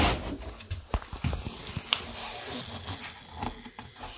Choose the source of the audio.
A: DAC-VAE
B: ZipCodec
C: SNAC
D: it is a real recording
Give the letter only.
D